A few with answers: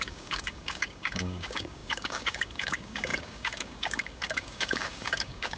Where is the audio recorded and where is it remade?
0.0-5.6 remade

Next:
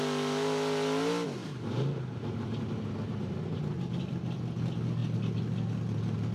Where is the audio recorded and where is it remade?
0.0-1.4 recorded; 1.4-3.6 remade; 3.6-6.3 recorded

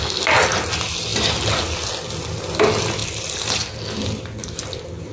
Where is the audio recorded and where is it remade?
0.0-5.1 recorded

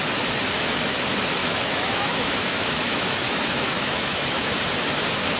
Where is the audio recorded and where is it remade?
0.0-1.4 recorded; 1.4-4.6 remade; 4.6-5.4 recorded

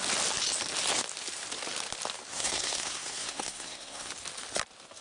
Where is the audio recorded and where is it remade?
0.0-2.3 recorded; 2.3-4.1 remade; 4.1-5.0 recorded

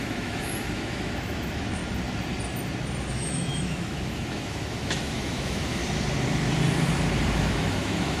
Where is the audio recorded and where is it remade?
0.0-1.8 remade; 1.8-3.1 recorded; 3.1-5.8 remade; 5.8-7.3 recorded; 7.3-8.2 remade

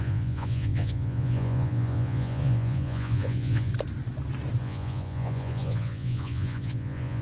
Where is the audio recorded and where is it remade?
0.0-3.7 remade; 3.7-4.6 recorded; 4.6-7.2 remade